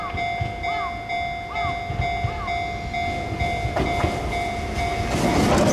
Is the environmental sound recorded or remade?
recorded